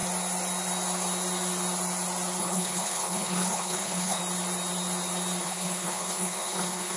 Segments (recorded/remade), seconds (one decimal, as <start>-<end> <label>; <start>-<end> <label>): 0.0-2.4 recorded; 2.4-4.2 remade; 4.2-5.4 recorded; 5.4-7.0 remade